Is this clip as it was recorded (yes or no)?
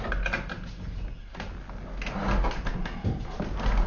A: yes